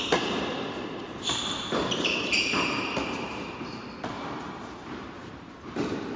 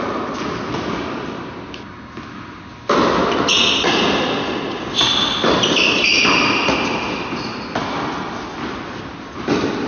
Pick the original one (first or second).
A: second